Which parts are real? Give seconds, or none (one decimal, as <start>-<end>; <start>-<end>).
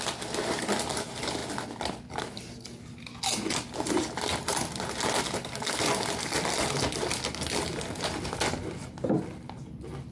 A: 0.0-10.1